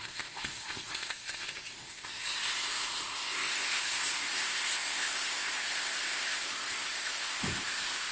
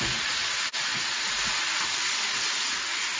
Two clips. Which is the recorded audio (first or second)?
second